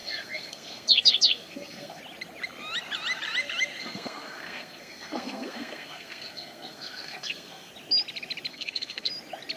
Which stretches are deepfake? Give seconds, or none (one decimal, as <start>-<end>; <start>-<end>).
0.0-2.0; 3.8-7.7; 8.5-9.1